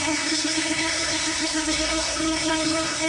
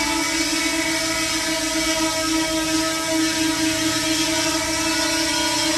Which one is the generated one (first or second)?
first